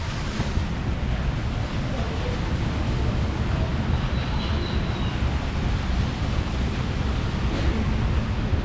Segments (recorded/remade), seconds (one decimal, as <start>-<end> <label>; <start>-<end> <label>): 0.0-8.6 recorded